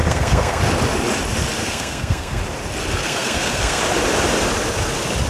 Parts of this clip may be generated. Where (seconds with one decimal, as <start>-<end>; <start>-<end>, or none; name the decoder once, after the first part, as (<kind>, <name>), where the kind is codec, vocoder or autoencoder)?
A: 0.0-0.6 (codec, SNAC); 1.6-2.4; 3.0-3.8